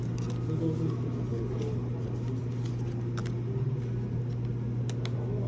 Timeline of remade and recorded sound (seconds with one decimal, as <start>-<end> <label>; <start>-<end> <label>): 0.0-5.5 recorded